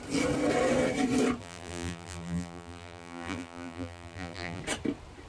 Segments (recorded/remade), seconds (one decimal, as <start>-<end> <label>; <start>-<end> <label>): 0.0-1.4 recorded; 1.4-4.6 remade; 4.6-5.3 recorded

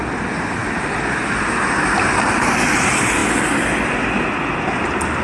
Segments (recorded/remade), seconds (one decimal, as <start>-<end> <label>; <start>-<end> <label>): 0.0-5.2 recorded

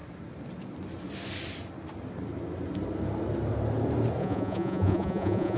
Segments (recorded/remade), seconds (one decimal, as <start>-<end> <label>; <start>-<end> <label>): 0.0-4.2 recorded; 4.2-5.6 remade

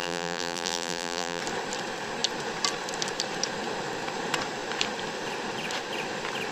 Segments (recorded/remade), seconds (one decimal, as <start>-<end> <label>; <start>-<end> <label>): 0.0-1.4 remade; 1.4-6.5 recorded

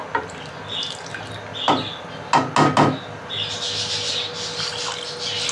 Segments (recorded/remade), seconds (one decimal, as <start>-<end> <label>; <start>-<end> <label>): 0.0-5.5 recorded

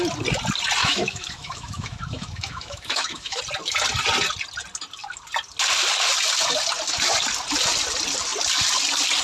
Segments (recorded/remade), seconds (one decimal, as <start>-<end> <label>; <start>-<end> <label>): 0.0-0.8 recorded; 0.8-3.4 remade; 3.4-9.2 recorded

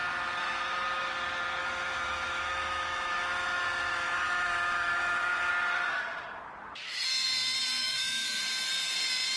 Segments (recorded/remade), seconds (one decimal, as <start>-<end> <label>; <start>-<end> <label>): 0.0-1.6 recorded; 1.6-5.5 remade; 5.5-7.8 recorded; 7.8-8.4 remade; 8.4-9.4 recorded

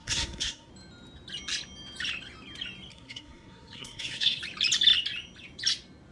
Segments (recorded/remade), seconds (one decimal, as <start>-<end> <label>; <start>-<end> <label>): 0.0-0.7 remade; 0.7-2.9 recorded; 2.9-4.4 remade; 4.4-6.1 recorded